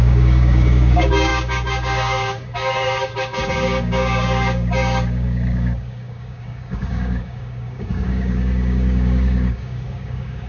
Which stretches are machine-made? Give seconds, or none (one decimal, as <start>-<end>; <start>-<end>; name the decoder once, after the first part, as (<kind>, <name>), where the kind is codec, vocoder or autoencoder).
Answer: 0.0-10.5 (codec, DAC)